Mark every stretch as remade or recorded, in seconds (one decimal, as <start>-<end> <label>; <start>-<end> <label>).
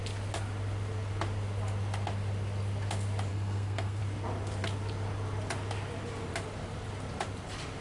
0.0-3.3 recorded; 3.3-4.0 remade; 4.0-7.8 recorded